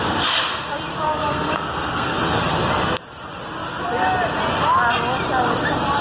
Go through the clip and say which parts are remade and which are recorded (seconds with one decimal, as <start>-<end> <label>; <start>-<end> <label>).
0.0-1.1 recorded; 1.1-2.5 remade; 2.5-6.0 recorded